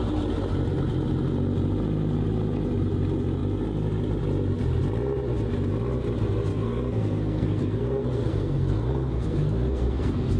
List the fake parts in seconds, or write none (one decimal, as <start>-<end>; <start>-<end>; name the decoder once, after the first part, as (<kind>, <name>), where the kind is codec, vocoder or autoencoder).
6.5-10.4 (codec, SNAC)